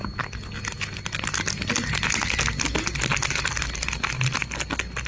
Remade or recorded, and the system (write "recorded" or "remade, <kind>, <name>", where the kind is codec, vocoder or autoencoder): recorded